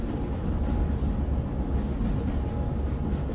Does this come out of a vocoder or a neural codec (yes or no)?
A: no